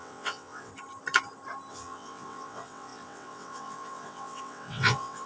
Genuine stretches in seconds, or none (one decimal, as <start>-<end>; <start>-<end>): 0.7-1.7

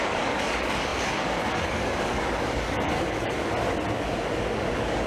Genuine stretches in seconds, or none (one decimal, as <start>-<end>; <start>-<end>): 3.5-4.5

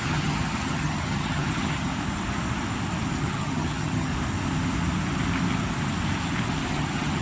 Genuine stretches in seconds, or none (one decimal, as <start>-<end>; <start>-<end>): 1.9-3.2; 4.1-6.7

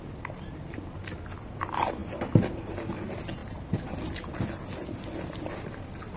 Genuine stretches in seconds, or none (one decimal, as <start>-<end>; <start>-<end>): 0.0-6.2